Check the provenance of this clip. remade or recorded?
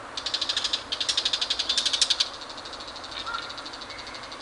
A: recorded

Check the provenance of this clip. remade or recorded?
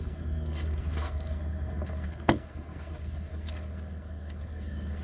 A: remade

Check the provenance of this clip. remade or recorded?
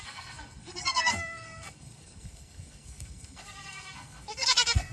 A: remade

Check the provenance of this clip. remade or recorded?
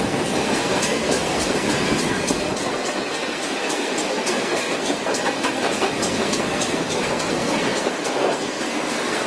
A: remade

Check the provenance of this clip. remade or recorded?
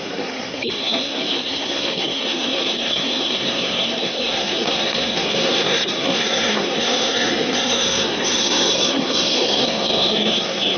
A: remade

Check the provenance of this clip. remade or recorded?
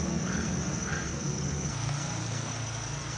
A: remade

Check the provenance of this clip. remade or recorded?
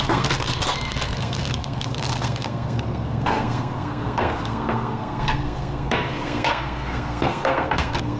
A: remade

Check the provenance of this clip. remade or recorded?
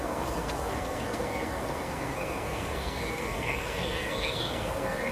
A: remade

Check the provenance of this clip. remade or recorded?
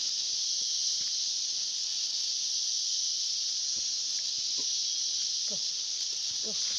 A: recorded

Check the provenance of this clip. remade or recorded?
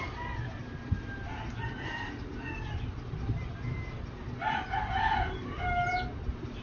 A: recorded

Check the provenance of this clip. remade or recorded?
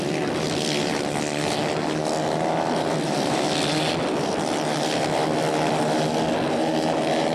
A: recorded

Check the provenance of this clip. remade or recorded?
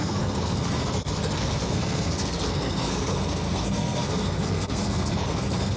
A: remade